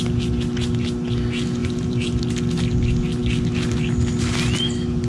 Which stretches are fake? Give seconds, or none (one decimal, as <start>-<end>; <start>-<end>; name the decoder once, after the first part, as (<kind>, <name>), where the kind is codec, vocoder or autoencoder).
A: 1.6-2.2 (vocoder, BigVGAN v2)